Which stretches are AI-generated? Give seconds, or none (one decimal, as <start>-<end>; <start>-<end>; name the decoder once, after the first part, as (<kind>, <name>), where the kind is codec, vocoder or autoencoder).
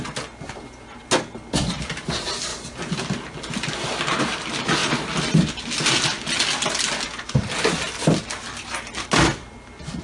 none